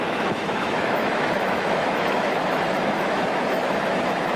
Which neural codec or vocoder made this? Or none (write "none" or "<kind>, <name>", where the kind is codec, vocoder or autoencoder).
autoencoder, DAC-VAE